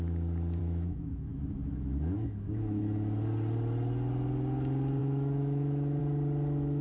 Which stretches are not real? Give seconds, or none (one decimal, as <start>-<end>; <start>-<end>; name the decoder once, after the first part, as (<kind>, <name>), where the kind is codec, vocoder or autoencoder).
0.6-2.8 (autoencoder, DAC-VAE); 5.0-6.0